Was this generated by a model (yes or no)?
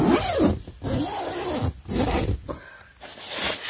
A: no